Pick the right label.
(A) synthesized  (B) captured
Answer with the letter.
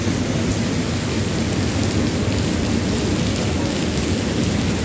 B